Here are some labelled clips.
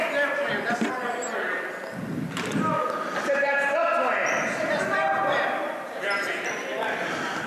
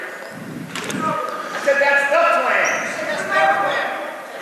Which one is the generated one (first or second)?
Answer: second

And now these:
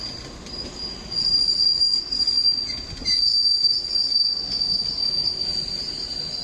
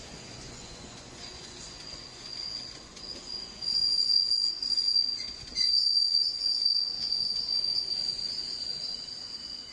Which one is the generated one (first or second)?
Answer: second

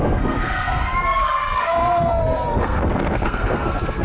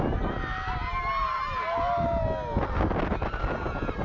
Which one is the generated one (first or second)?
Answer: first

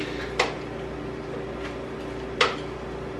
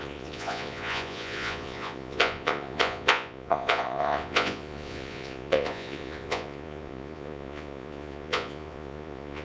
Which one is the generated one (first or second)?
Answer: second